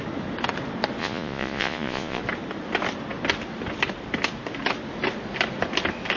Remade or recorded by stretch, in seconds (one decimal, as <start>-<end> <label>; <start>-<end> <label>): 0.0-1.0 recorded; 1.0-2.2 remade; 2.2-6.2 recorded